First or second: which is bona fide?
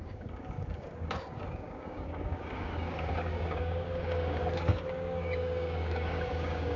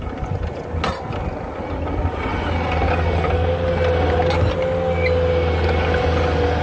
second